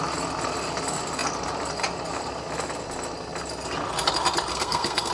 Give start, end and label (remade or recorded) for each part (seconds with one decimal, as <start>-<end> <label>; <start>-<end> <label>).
0.0-4.5 recorded; 4.5-5.1 remade